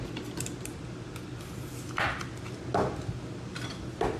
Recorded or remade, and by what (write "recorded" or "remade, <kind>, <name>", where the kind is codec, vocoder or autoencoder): recorded